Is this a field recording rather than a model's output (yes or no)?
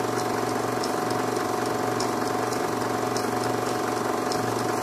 yes